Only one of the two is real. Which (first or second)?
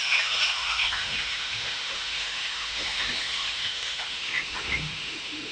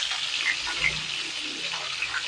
second